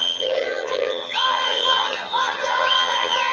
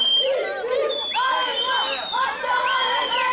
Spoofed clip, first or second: first